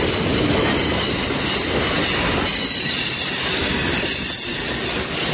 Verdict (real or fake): real